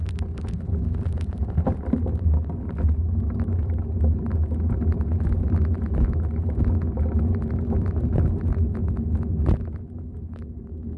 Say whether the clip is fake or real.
real